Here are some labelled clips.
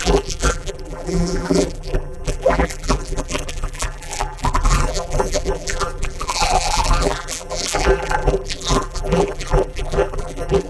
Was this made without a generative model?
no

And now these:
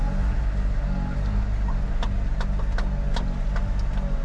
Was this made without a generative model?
yes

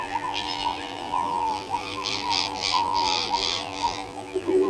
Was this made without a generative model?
no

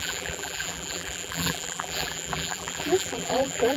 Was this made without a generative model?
no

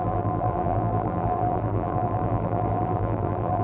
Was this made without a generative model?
no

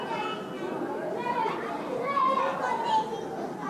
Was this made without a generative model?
yes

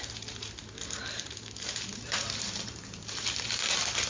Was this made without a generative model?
no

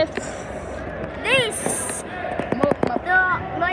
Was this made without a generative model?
yes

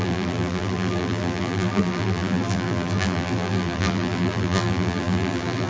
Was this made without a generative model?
no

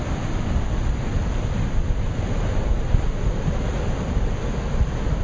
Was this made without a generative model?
yes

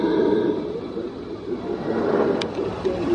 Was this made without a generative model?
yes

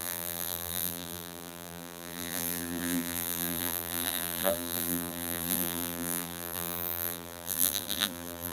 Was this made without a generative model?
no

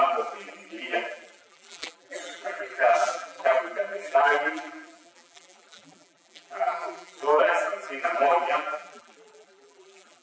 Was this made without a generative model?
no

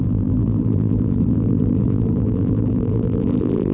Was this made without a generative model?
no